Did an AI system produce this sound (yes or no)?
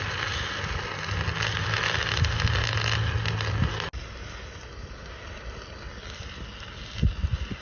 no